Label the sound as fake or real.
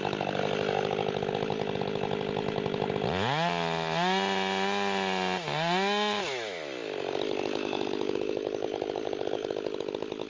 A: real